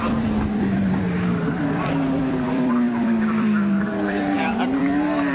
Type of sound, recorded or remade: remade